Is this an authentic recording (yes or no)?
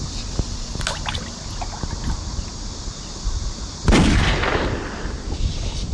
yes